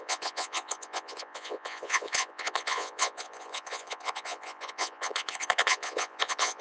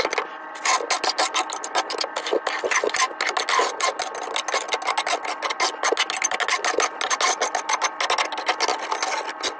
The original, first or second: second